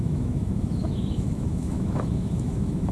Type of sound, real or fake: fake